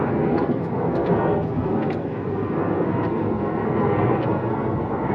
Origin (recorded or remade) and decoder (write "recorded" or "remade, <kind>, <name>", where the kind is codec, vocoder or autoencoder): remade, codec, SNAC